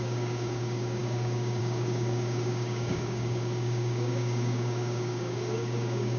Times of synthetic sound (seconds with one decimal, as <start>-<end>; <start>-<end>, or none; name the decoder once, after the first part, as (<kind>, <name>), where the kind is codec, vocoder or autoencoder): 0.0-6.2 (codec, DAC)